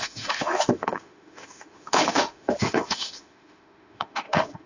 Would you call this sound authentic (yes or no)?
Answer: no